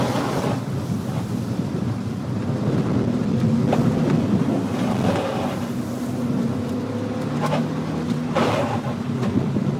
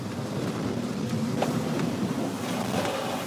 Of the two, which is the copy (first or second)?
second